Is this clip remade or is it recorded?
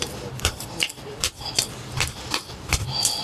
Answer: remade